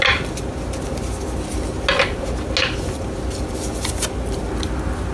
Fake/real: real